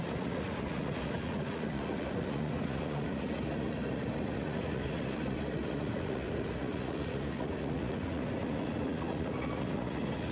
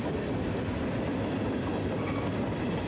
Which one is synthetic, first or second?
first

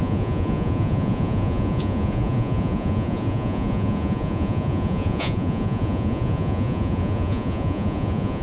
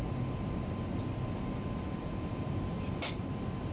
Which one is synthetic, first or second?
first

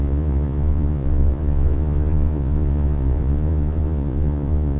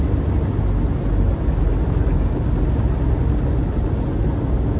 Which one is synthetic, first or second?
first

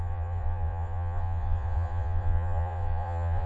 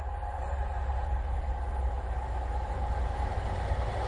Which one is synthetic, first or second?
first